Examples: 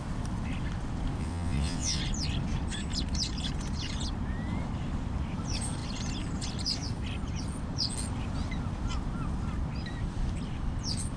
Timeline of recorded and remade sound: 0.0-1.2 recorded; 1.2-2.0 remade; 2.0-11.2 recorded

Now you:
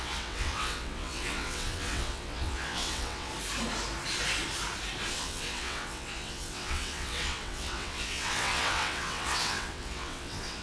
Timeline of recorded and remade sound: 0.0-3.3 remade; 3.3-5.1 recorded; 5.1-10.6 remade